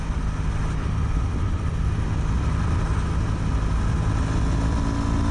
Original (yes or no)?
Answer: yes